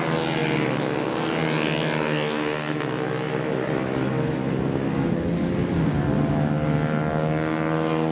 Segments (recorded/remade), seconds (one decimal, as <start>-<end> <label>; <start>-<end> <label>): 0.0-8.1 recorded